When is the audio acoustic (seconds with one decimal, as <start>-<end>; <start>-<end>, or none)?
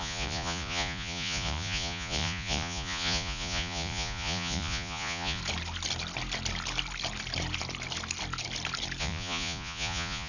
5.4-9.0